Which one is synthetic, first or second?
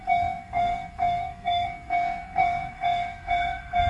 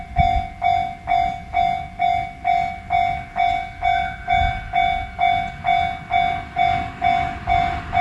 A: first